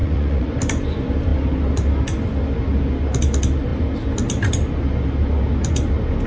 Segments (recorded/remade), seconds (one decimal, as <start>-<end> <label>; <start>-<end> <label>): 0.0-0.5 remade; 0.5-6.3 recorded